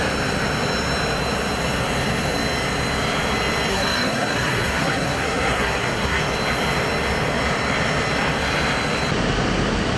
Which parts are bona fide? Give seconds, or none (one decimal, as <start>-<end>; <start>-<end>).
0.0-3.7; 6.2-10.0